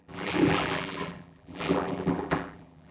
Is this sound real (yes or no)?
no